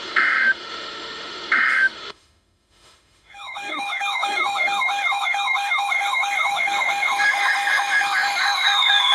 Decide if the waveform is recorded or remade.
remade